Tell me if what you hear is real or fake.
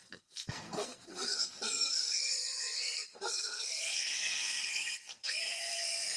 fake